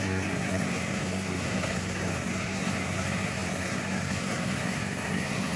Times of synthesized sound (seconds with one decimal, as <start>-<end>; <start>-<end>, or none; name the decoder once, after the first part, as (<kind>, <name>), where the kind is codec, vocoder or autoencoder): 0.0-5.6 (codec, SNAC)